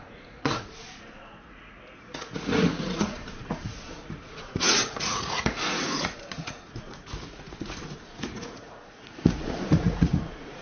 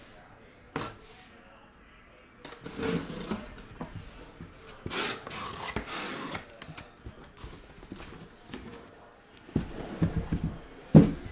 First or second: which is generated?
first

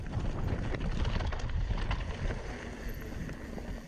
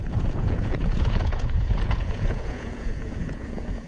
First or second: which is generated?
second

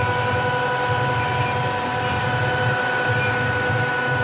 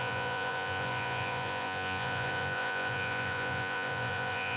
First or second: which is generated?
second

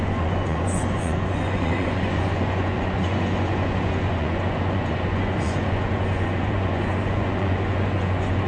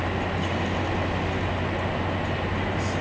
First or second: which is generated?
first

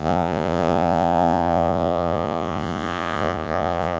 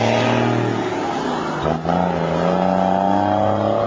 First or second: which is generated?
first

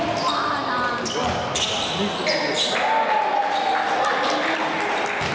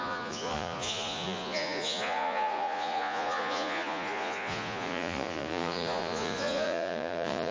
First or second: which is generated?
second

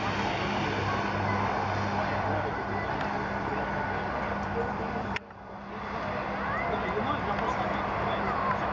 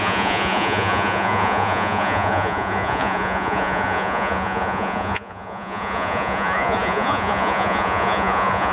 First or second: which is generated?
second